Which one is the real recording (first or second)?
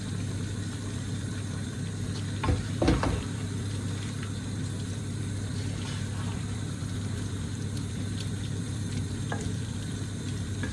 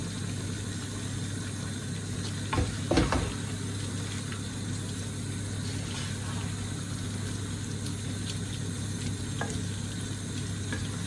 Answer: second